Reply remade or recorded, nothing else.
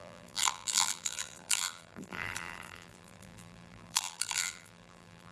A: remade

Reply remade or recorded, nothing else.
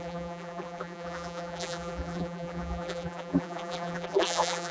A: remade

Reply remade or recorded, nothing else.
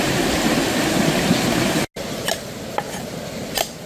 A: recorded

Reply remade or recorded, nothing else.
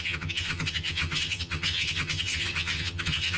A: remade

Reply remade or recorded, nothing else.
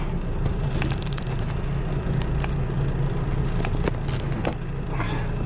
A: remade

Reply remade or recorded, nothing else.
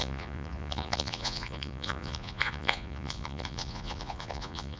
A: remade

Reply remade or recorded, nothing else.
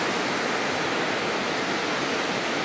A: recorded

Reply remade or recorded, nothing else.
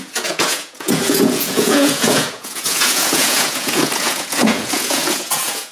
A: remade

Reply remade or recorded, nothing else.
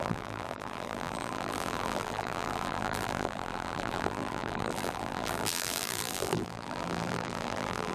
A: remade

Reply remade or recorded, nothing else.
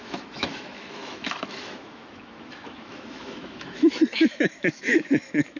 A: remade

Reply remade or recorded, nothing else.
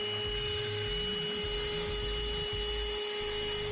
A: recorded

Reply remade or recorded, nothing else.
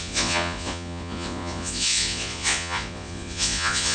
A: remade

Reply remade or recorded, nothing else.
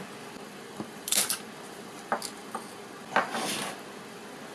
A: recorded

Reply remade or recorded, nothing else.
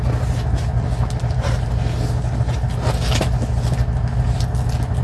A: recorded